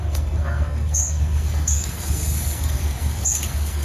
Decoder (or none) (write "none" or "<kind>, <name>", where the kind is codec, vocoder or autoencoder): codec, SNAC